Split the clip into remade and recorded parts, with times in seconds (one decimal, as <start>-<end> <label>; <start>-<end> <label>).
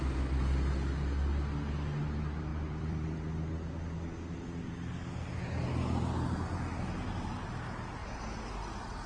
0.0-2.5 recorded; 2.5-3.5 remade; 3.5-9.1 recorded